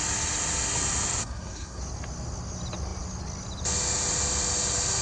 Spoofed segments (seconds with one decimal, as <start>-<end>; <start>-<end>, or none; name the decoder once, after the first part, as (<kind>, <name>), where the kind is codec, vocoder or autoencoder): 1.2-1.8 (codec, SNAC)